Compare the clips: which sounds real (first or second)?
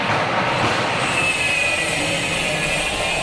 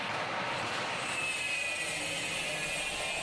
second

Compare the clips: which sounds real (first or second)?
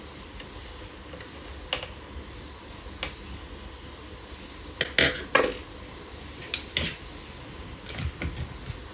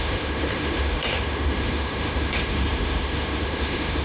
first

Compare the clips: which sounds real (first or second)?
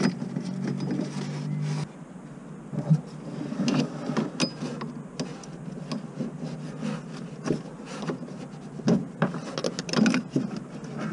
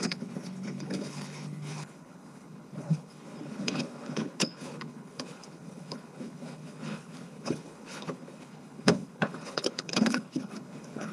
first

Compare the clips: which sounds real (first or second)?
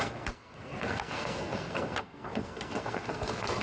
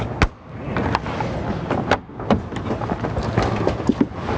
second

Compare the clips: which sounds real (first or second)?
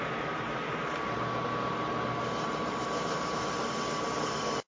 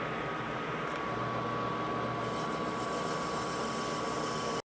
second